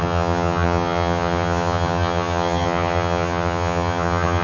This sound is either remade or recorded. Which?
remade